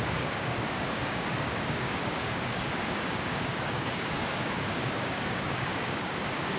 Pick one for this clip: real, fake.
fake